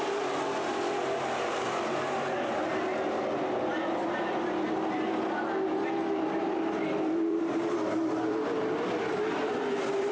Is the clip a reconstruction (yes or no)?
yes